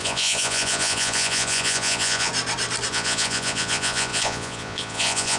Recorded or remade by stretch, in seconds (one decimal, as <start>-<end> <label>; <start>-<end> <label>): 0.0-2.3 remade; 2.3-2.9 recorded; 2.9-5.4 remade